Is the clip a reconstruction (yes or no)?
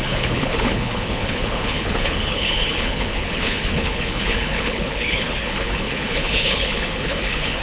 yes